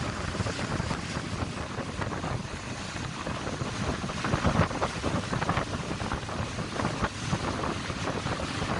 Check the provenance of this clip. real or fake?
real